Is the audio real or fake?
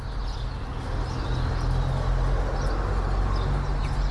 real